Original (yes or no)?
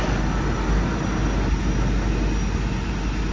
yes